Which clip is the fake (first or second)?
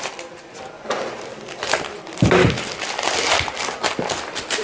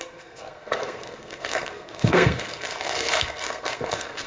second